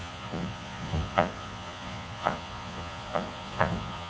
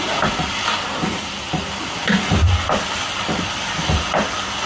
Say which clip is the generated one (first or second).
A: first